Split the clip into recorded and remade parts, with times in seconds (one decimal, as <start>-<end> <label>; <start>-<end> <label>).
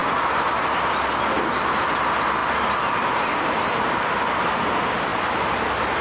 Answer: 0.0-6.0 recorded